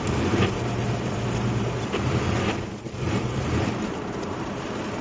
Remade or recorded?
remade